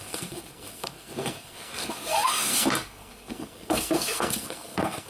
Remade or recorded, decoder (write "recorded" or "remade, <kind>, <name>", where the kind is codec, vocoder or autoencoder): remade, codec, SNAC